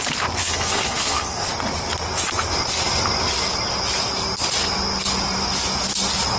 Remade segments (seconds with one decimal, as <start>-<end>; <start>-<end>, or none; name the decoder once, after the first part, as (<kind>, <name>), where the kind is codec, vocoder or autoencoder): 0.4-1.5 (codec, SNAC)